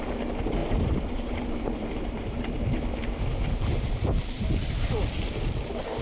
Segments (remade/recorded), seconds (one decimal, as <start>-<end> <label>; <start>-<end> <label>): 0.0-0.6 recorded; 0.6-2.8 remade; 2.8-6.0 recorded